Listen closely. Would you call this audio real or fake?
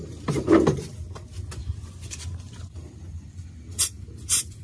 real